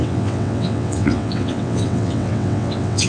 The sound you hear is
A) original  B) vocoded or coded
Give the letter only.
B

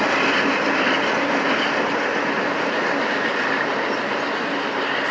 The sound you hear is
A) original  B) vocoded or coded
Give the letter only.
A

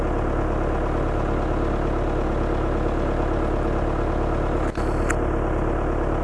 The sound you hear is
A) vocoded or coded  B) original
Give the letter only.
B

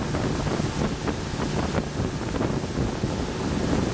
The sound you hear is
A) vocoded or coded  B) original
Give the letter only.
B